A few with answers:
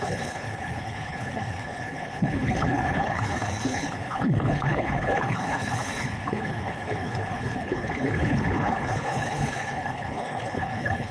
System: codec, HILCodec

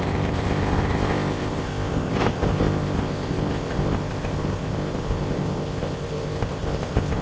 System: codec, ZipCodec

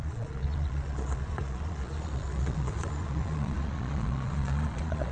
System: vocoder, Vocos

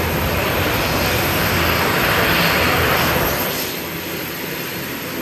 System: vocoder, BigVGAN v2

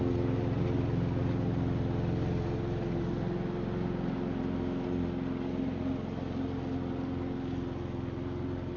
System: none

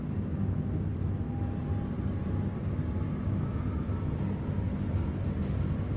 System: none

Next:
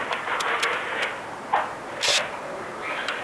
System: none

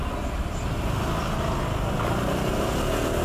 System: none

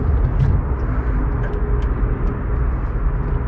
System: none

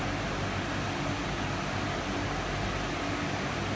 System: none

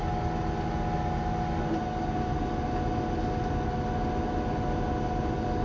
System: none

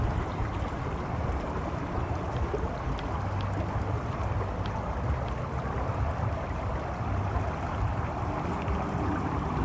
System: none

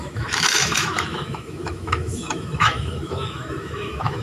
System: autoencoder, DAC-VAE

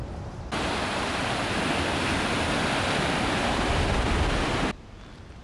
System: none